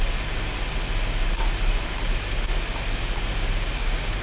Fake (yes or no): no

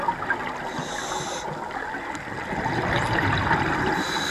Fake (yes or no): no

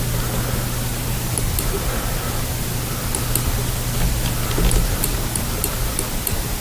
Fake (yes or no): no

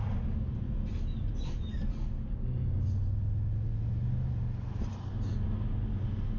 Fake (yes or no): no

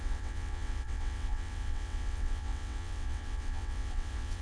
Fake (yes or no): yes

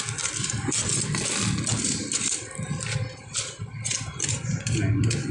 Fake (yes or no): no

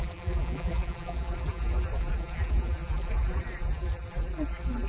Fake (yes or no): yes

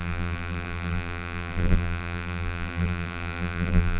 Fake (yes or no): yes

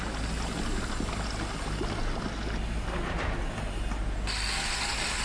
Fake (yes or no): no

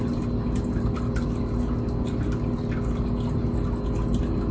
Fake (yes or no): no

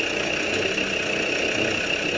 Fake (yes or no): no